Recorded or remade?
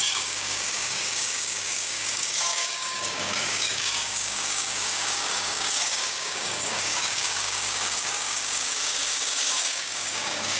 remade